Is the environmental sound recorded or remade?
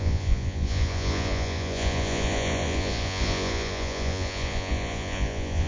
remade